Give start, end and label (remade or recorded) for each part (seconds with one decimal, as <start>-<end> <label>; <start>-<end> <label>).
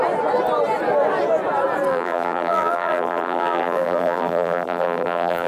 0.0-1.9 recorded; 1.9-5.5 remade